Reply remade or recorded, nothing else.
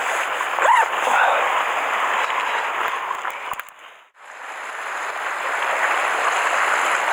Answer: recorded